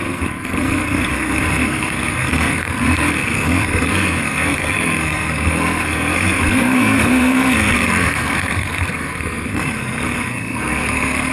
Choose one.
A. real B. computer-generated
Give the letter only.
B